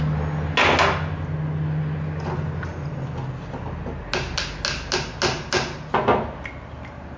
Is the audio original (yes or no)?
yes